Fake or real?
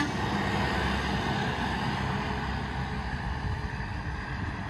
real